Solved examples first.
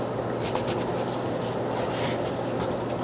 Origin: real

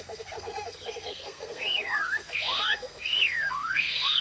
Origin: fake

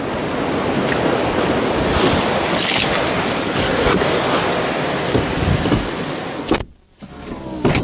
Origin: real